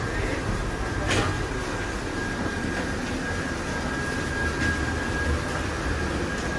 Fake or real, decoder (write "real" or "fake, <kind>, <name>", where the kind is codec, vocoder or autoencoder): real